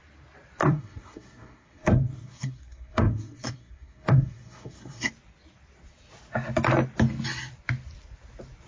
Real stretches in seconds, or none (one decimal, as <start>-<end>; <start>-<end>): 0.0-0.6; 5.1-8.7